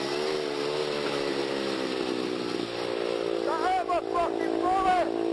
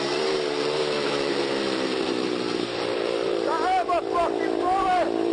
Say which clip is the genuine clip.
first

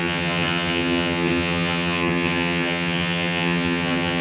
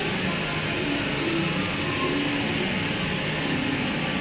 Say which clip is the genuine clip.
second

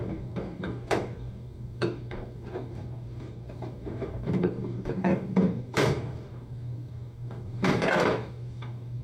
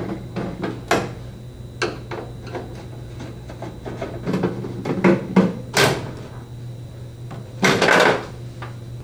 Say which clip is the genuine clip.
second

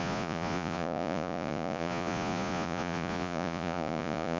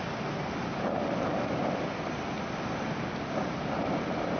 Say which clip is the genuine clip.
second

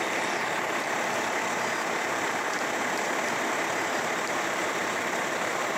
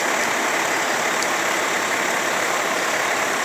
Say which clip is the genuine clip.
second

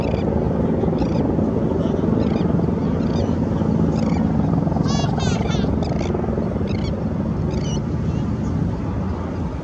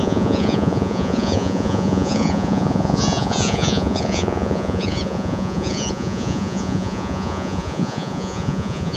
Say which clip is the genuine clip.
first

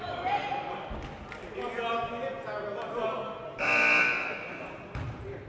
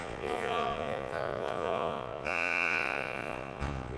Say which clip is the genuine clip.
first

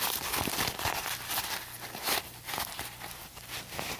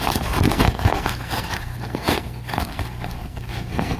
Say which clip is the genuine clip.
first